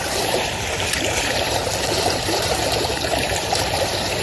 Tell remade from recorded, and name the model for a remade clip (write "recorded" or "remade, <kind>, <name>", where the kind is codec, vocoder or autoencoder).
remade, vocoder, BigVGAN v2